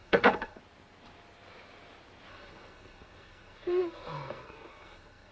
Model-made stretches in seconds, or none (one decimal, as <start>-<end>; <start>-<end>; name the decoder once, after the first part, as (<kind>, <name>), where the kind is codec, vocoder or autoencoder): 0.0-0.6 (codec, SNAC); 2.3-5.3

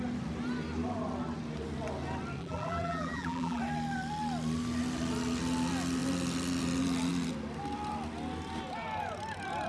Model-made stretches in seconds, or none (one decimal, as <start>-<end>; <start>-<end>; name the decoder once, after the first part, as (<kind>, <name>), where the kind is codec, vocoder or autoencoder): 2.4-3.6 (vocoder, BigVGAN v2)

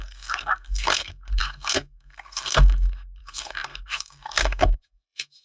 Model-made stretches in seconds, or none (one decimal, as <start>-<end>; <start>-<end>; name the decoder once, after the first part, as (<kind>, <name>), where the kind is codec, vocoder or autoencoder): 0.0-5.4 (codec, SNAC)

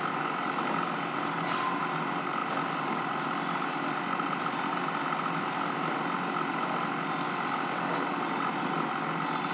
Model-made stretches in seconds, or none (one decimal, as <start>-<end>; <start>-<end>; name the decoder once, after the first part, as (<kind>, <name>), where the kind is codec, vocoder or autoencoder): none

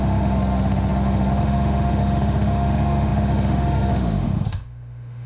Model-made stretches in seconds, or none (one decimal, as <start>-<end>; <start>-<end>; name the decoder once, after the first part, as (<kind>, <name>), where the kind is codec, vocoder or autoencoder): 0.0-5.3 (autoencoder, DAC-VAE)

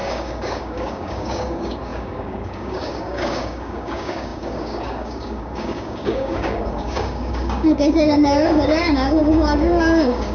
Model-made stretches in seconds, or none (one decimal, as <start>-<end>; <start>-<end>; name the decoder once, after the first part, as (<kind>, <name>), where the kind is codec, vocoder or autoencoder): 0.0-10.3 (codec, DAC)